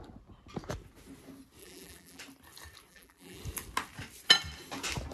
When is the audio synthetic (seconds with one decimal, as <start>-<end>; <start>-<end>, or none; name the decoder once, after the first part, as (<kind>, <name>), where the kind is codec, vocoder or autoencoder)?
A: 1.6-2.2 (vocoder, BigVGAN v2); 2.9-3.4

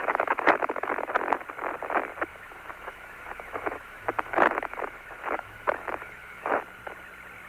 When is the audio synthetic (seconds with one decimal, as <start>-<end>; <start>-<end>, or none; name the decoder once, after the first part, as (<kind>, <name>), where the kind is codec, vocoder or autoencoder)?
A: 0.0-0.9 (autoencoder, DAC-VAE); 2.3-6.6

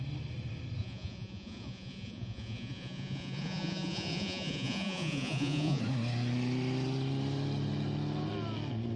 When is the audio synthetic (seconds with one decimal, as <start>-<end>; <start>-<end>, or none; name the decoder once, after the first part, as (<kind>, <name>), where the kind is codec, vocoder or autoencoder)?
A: 0.8-5.8 (vocoder, Vocos)